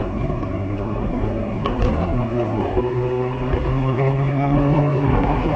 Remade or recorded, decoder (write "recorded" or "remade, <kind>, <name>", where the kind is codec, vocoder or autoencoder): remade, codec, SNAC